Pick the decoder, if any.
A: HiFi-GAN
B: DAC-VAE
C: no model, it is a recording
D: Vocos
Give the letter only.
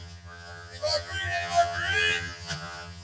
A